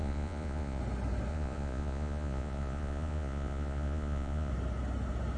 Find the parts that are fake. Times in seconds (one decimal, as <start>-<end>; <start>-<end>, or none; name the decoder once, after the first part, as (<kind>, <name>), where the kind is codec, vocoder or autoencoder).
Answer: 0.0-0.8 (vocoder, Vocos); 1.3-4.5